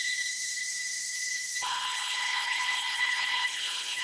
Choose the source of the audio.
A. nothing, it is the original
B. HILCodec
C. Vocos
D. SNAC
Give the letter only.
B